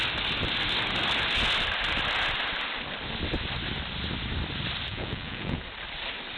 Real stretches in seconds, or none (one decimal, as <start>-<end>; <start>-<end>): 0.0-4.9; 5.6-6.4